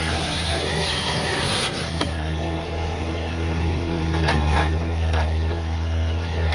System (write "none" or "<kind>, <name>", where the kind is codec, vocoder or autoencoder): codec, SNAC